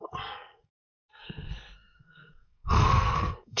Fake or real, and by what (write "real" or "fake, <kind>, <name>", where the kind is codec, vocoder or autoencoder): fake, codec, SNAC